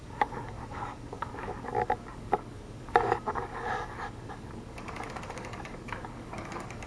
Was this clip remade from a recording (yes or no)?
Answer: yes